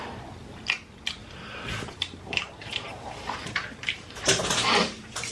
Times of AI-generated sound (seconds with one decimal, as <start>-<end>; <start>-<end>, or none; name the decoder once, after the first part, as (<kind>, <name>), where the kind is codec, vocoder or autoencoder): 1.2-4.4 (vocoder, BigVGAN v2)